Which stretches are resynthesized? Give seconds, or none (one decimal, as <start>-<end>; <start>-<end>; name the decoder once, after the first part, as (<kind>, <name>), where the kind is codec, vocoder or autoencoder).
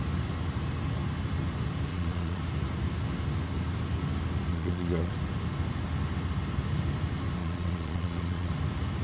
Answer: 1.9-2.4 (vocoder, Vocos); 4.5-5.1; 7.4-8.5